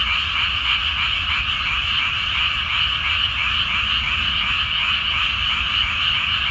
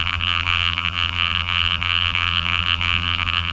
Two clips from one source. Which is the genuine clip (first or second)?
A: first